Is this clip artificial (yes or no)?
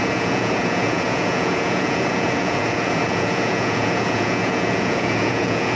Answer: yes